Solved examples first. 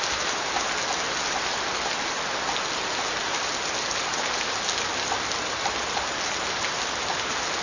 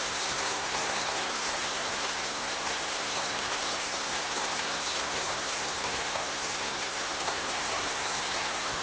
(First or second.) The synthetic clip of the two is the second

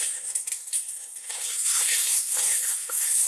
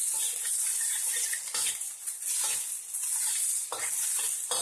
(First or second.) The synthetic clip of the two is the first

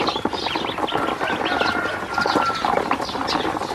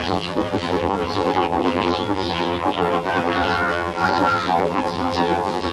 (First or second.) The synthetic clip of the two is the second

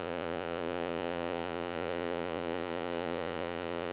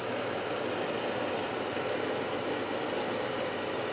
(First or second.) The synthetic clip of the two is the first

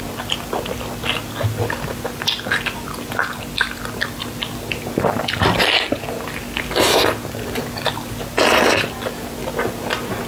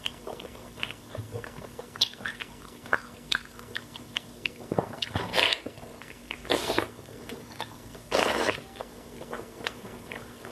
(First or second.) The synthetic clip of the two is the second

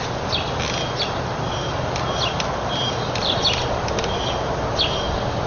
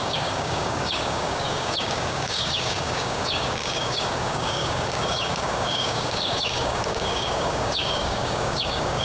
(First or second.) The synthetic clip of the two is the second